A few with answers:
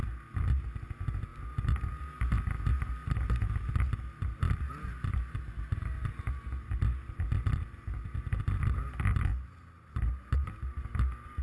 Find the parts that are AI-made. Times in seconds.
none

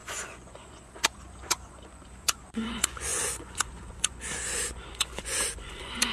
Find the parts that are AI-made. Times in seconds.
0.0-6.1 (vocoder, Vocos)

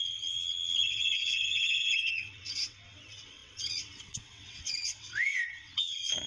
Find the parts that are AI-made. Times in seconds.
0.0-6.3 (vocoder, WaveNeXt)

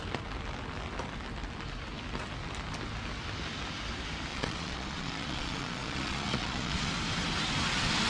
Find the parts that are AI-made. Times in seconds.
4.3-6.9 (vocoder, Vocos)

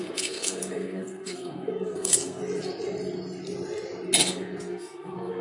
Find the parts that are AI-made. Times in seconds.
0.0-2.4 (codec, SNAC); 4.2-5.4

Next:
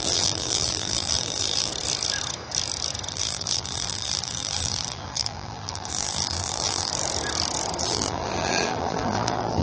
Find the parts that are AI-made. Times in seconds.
0.0-1.7 (vocoder, BigVGAN v2); 3.1-6.9; 7.8-9.6